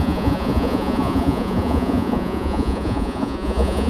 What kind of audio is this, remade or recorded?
remade